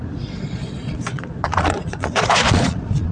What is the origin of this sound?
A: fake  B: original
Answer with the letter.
A